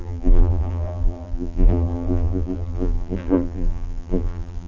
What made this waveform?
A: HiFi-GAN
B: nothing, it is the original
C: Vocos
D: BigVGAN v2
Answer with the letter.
D